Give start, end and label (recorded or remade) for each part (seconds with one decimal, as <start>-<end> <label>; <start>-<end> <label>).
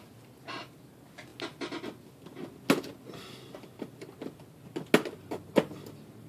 0.0-6.3 recorded